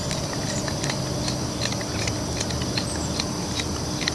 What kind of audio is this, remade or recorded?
recorded